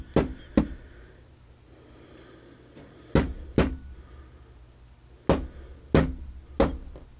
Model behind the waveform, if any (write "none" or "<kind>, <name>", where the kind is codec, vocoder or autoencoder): none